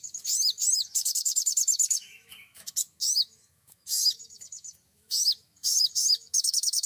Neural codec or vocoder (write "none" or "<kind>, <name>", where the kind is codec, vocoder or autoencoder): autoencoder, DAC-VAE